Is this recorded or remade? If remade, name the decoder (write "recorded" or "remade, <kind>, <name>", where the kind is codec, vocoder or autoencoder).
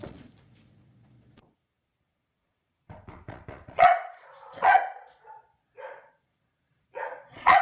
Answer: remade, vocoder, Vocos